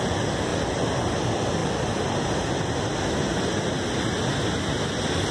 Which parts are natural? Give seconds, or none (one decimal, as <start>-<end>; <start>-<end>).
0.0-5.3